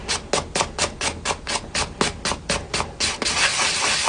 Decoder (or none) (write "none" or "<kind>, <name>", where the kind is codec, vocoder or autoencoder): none